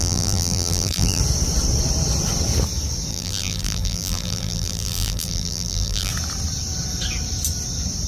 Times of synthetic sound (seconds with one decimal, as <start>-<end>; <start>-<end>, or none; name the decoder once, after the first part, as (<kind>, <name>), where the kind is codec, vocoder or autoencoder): 0.0-1.2 (vocoder, BigVGAN v2); 3.1-6.1